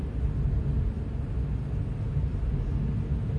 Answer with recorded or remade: recorded